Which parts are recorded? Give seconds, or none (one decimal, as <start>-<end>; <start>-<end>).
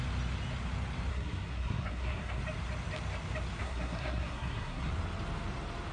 0.0-1.1; 2.4-3.6; 4.9-5.9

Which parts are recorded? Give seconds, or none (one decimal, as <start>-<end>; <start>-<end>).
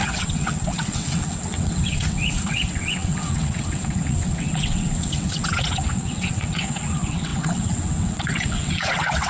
none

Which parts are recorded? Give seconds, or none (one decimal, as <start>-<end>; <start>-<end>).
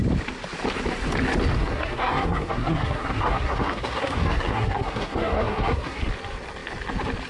0.0-1.6; 6.0-7.3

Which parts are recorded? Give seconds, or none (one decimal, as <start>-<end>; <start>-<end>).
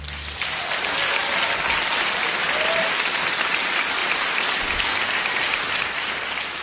0.0-4.0; 4.6-6.6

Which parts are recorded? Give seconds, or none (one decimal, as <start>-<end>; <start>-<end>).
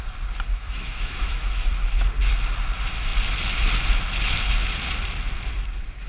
0.0-0.5; 1.7-6.1